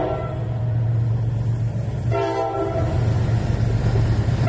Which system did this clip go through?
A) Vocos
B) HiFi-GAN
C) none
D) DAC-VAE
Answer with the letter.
C